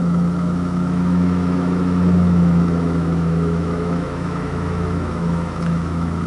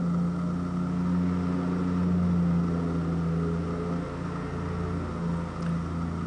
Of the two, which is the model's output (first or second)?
first